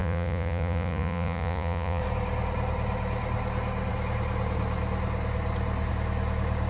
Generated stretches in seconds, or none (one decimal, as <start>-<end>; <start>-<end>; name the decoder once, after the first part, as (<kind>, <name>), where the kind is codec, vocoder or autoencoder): 0.0-2.0 (vocoder, Vocos)